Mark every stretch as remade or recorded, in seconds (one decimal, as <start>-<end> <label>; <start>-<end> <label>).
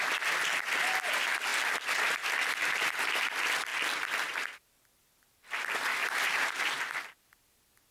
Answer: 0.0-6.0 recorded; 6.0-6.8 remade; 6.8-7.9 recorded